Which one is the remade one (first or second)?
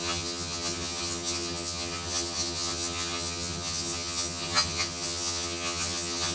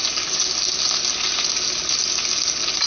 first